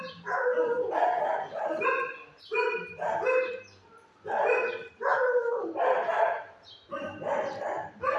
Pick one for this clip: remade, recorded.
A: remade